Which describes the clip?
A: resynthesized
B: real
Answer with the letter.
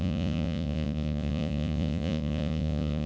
A